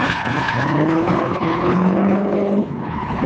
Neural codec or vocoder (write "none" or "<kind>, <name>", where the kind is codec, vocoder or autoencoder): codec, HILCodec